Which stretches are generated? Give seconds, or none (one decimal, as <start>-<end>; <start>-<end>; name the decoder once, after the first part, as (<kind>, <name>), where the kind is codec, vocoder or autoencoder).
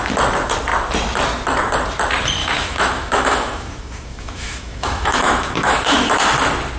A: 2.4-6.2 (autoencoder, DAC-VAE)